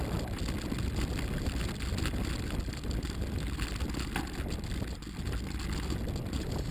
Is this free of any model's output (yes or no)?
yes